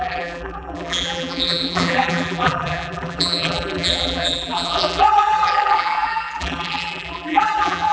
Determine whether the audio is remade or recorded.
remade